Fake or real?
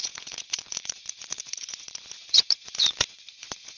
fake